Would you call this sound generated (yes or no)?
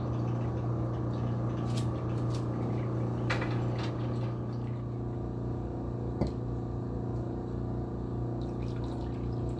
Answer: no